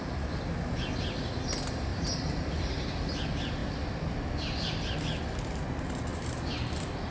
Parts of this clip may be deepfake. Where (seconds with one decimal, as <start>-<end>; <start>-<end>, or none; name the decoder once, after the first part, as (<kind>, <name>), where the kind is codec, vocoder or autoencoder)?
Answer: 1.9-2.9 (vocoder, BigVGAN v2); 3.6-5.2; 6.1-7.1